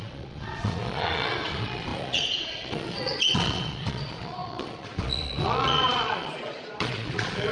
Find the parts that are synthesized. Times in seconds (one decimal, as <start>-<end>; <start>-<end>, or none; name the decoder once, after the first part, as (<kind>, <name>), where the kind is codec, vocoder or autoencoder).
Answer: 0.0-7.5 (vocoder, Vocos)